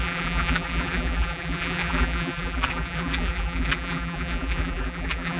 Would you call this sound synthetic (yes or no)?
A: yes